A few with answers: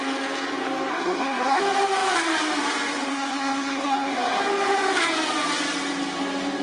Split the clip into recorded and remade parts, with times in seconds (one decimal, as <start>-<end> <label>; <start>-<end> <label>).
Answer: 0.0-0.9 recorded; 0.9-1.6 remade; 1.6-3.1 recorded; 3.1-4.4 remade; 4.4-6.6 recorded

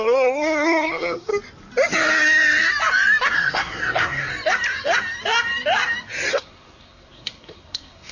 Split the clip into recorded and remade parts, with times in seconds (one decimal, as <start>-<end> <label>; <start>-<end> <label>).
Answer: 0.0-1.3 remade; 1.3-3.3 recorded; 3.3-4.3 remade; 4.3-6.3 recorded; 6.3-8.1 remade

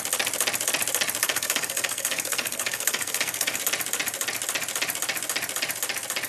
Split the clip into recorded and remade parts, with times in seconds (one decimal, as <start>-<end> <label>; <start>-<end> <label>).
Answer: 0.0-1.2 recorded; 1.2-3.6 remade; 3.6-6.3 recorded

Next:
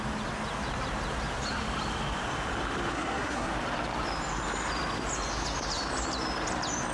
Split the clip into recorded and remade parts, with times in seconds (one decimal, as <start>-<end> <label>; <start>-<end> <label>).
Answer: 0.0-2.9 recorded; 2.9-3.5 remade; 3.5-6.9 recorded

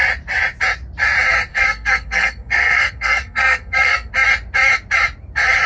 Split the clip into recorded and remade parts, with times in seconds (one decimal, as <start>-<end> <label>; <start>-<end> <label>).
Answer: 0.0-1.5 recorded; 1.5-4.1 remade; 4.1-5.7 recorded

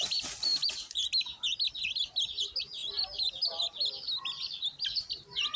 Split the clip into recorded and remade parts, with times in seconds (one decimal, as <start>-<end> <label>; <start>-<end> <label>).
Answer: 0.0-5.6 recorded

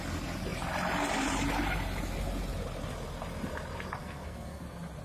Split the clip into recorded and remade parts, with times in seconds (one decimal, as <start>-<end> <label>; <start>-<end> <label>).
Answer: 0.0-4.0 recorded; 4.0-4.6 remade; 4.6-5.0 recorded

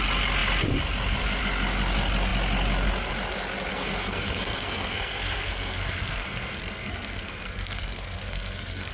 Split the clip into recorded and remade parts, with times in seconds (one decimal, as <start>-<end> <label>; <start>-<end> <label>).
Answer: 0.0-3.7 recorded; 3.7-8.9 remade